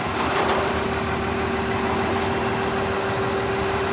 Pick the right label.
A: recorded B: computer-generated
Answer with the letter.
A